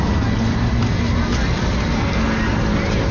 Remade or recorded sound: recorded